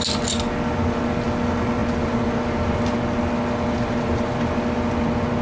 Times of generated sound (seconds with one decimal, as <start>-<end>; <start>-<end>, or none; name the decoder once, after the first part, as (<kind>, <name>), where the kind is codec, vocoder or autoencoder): none